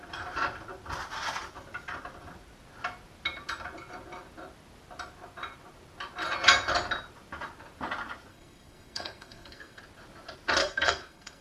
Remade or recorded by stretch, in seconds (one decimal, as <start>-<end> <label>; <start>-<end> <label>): 0.0-8.3 recorded; 8.3-9.8 remade; 9.8-10.6 recorded; 10.6-11.4 remade